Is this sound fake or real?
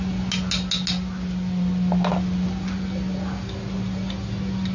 real